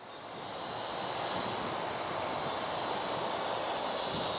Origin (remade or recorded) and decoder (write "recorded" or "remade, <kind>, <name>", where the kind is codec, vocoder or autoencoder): recorded